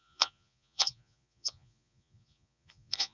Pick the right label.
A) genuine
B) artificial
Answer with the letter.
B